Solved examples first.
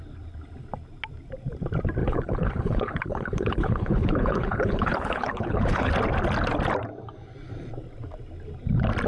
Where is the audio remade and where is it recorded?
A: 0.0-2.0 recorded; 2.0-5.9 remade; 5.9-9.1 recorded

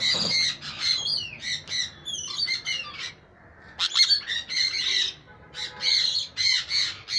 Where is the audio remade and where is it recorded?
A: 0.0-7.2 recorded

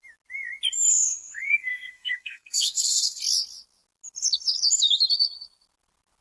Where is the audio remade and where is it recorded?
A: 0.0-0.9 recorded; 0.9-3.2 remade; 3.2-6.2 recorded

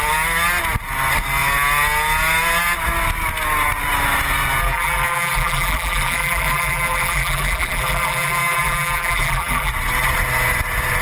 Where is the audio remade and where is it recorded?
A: 0.0-4.6 recorded; 4.6-9.7 remade; 9.7-11.0 recorded

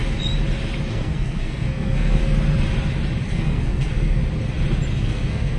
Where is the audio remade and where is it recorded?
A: 0.0-0.9 recorded; 0.9-2.2 remade; 2.2-3.3 recorded; 3.3-4.2 remade; 4.2-4.9 recorded; 4.9-5.6 remade